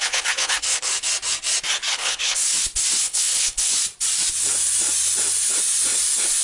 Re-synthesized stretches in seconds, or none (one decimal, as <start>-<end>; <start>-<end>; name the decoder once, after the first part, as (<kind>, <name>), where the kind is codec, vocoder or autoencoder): 0.0-0.9 (codec, HILCodec); 1.9-2.4; 3.0-3.7